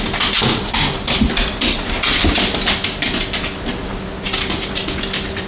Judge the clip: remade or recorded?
recorded